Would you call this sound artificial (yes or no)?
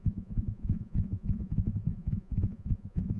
yes